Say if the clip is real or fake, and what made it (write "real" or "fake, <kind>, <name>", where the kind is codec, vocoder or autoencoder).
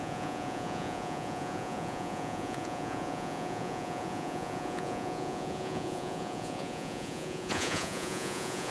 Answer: fake, vocoder, Vocos